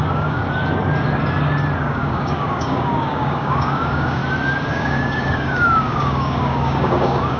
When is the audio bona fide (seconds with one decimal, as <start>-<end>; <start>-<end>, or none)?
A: 0.4-1.8; 4.2-4.7